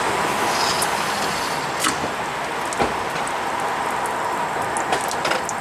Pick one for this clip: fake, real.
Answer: real